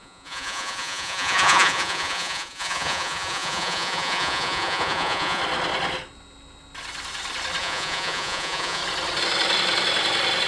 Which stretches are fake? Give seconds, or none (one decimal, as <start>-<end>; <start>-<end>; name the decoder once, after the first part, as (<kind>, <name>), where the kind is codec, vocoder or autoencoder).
0.0-5.4 (vocoder, Vocos); 7.6-8.8